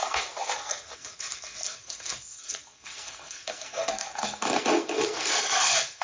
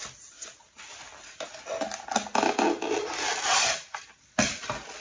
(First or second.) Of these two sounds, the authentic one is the second